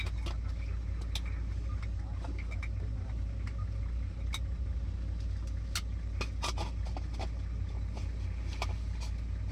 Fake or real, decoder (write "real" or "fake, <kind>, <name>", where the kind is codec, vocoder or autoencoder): real